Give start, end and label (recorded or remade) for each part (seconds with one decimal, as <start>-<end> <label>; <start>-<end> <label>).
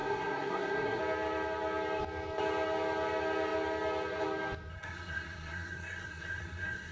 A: 0.0-1.0 remade; 1.0-4.7 recorded; 4.7-6.9 remade